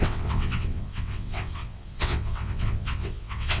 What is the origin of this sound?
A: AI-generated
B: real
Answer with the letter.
A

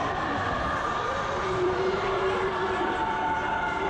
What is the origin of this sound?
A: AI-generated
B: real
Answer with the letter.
A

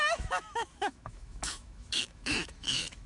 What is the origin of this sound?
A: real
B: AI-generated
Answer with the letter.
B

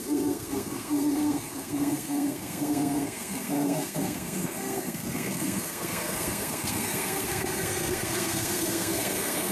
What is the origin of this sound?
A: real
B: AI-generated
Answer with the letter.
B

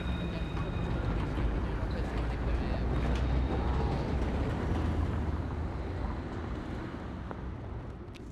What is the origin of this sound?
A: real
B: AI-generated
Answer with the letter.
A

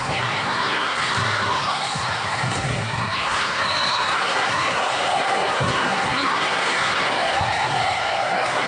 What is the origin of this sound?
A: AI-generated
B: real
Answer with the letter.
A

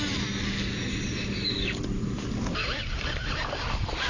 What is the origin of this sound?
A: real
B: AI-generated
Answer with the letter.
A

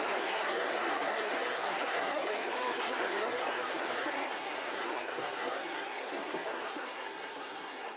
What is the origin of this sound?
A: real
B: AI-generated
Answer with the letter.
B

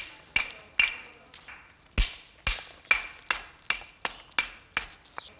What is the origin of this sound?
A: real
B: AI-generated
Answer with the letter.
A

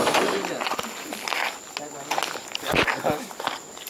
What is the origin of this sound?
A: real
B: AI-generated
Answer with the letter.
A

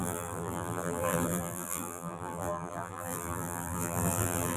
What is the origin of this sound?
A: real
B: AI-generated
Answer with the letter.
B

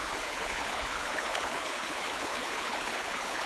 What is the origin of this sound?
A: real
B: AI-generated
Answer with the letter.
B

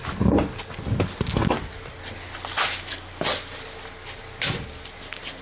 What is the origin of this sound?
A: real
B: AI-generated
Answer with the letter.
A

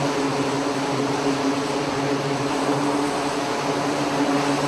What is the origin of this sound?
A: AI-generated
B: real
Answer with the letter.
B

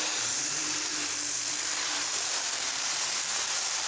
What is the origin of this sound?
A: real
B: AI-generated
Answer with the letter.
B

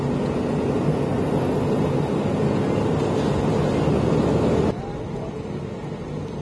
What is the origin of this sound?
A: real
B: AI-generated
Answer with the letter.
A